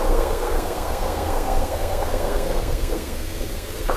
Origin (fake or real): fake